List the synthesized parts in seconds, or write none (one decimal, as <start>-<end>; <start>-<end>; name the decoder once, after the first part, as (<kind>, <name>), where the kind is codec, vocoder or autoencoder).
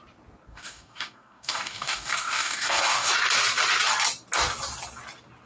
0.5-3.1 (codec, DAC)